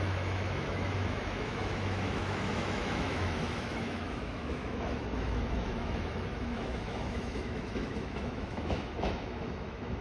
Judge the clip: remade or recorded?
remade